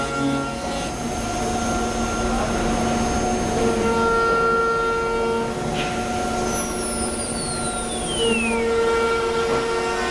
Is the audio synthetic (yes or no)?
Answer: no